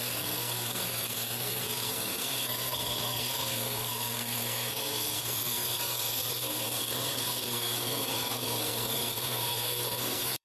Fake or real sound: fake